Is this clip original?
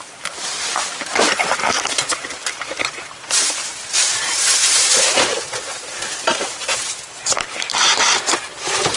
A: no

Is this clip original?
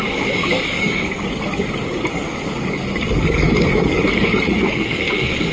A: no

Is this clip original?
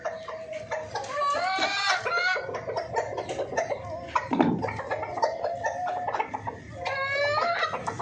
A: yes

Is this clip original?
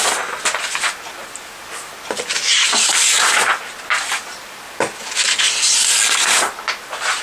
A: yes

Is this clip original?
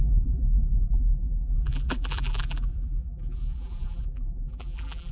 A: no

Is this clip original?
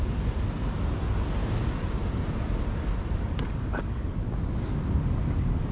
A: yes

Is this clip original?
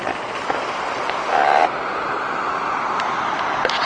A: yes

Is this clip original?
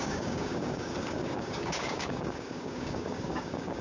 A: no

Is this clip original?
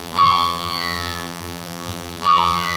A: no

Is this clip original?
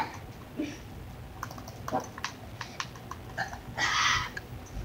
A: yes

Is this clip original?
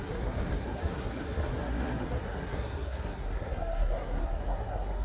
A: no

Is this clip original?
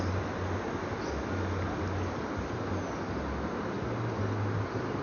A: yes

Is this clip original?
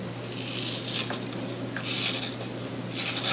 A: yes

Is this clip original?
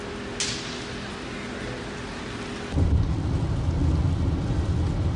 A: yes